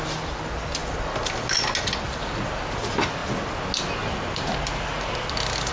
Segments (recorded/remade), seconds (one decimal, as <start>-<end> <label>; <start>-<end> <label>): 0.0-5.7 recorded